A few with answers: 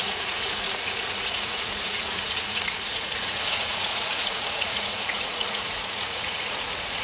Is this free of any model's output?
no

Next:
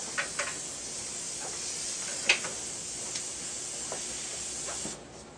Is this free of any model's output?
yes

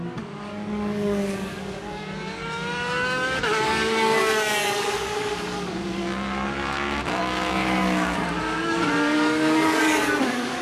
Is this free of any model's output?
no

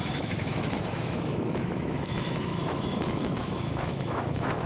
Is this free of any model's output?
no